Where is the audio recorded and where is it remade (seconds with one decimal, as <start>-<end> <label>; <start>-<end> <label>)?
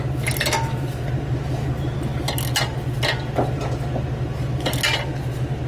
0.0-5.7 recorded